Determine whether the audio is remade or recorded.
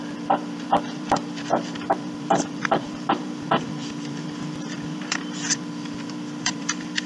remade